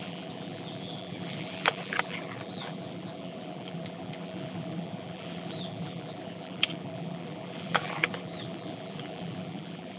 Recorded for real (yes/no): no